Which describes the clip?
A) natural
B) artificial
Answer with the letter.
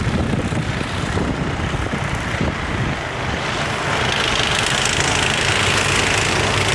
A